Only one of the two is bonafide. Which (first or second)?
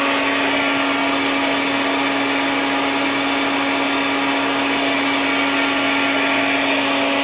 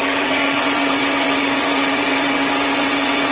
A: first